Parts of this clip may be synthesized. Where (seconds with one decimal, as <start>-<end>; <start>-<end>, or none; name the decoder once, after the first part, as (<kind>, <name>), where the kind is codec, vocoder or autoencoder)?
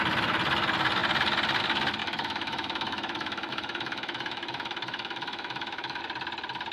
2.0-6.0 (autoencoder, DAC-VAE)